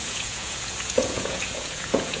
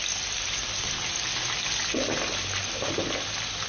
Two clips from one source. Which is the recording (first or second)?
second